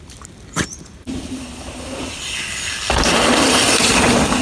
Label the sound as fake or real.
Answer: fake